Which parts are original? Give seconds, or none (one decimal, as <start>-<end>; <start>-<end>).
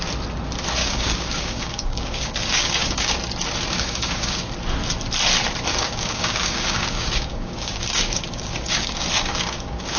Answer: 0.0-0.8; 3.1-3.7; 4.5-5.7